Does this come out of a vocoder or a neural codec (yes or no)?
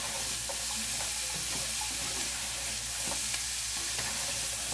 no